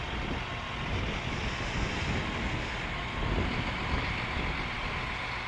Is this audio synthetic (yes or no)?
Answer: no